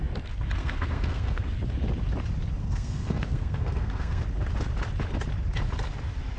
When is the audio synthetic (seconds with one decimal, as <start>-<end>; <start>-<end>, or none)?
0.6-1.5; 2.6-4.2